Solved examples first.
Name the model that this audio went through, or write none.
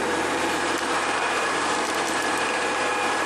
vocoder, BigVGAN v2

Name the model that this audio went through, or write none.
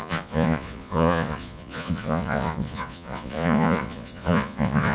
vocoder, Vocos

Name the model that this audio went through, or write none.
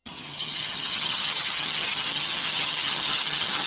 vocoder, HiFi-GAN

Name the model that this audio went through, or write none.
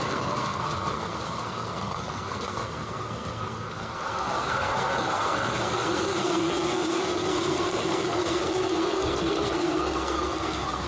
codec, SNAC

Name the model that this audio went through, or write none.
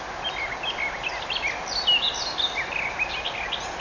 none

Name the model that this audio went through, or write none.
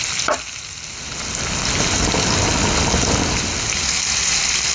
none